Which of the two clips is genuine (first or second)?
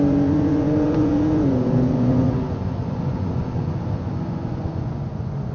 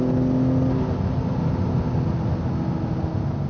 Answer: second